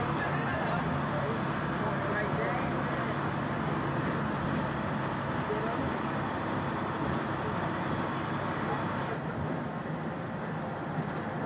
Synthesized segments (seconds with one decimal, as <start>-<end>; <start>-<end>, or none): 0.0-0.5; 1.6-11.5